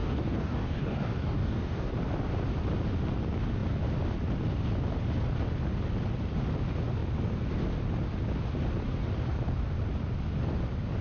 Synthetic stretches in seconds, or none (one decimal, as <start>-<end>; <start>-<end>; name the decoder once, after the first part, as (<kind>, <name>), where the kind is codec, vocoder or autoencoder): 0.0-1.9 (codec, DAC)